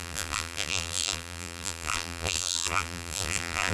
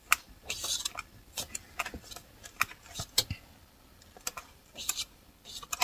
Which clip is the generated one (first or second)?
first